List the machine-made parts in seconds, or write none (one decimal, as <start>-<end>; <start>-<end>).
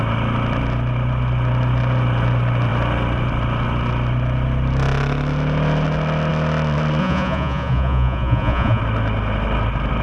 7.0-8.8